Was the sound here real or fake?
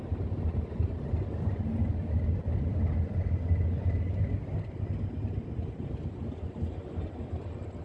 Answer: real